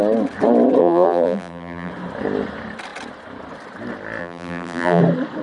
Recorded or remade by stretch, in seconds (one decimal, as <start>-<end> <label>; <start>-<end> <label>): 0.0-0.8 recorded; 0.8-1.9 remade; 1.9-4.2 recorded; 4.2-5.0 remade; 5.0-5.4 recorded